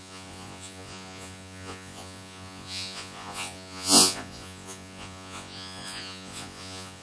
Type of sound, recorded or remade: remade